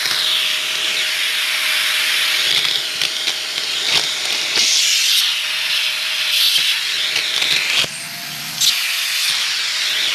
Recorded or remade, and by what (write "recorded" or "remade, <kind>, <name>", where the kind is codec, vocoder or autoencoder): recorded